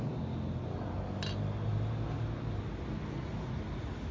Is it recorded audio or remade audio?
recorded